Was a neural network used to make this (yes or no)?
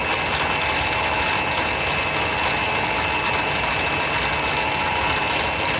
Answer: no